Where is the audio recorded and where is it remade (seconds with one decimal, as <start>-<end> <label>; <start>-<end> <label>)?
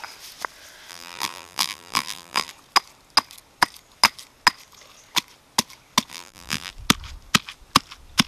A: 0.0-0.9 recorded; 0.9-2.5 remade; 2.5-6.1 recorded; 6.1-6.7 remade; 6.7-8.3 recorded